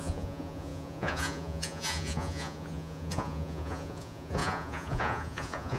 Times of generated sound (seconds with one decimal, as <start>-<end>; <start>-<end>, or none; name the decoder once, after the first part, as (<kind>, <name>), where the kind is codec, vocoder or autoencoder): 0.0-5.8 (vocoder, Vocos)